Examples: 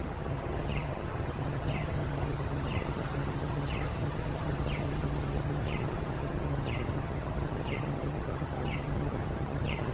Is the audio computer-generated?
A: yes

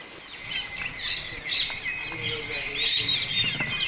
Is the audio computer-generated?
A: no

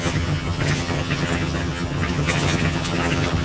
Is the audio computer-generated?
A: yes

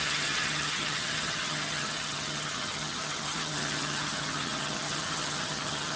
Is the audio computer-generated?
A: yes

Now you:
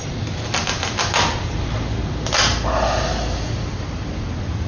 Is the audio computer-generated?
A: no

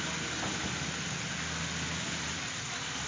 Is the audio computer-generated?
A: no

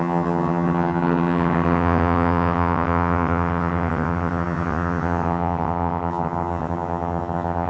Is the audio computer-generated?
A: yes